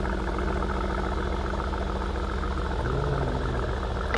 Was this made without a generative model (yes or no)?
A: yes